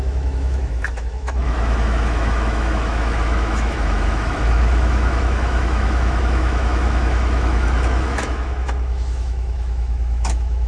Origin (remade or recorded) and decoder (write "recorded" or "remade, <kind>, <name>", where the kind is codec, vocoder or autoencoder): remade, autoencoder, DAC-VAE